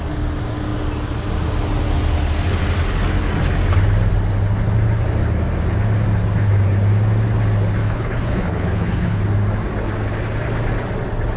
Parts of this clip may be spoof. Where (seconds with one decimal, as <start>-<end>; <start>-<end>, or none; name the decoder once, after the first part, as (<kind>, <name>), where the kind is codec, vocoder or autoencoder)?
7.8-9.2 (codec, HILCodec)